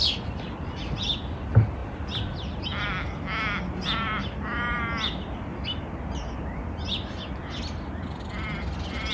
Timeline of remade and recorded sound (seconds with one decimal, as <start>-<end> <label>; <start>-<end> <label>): 0.0-9.1 recorded

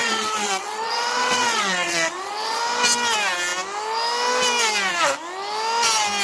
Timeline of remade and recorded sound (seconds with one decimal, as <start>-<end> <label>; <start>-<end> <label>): 0.0-2.6 remade; 2.6-6.2 recorded

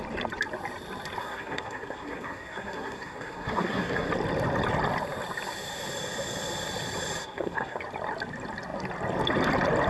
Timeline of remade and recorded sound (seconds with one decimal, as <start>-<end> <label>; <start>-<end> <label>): 0.0-1.2 recorded; 1.2-4.1 remade; 4.1-7.2 recorded; 7.2-7.8 remade; 7.8-9.9 recorded

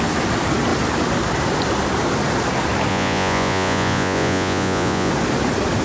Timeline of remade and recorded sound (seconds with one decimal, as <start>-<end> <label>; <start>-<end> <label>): 0.0-2.9 recorded; 2.9-5.1 remade; 5.1-5.8 recorded